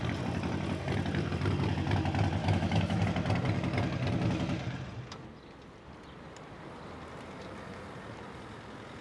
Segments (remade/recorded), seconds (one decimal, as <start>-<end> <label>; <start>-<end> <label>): 0.0-2.4 recorded; 2.4-3.0 remade; 3.0-9.0 recorded